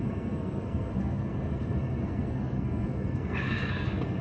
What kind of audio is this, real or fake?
fake